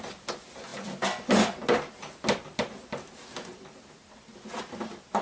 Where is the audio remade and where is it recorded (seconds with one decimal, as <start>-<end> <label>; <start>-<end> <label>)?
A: 0.0-5.2 recorded